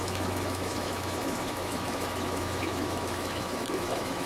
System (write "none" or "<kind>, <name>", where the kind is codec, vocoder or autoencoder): autoencoder, DAC-VAE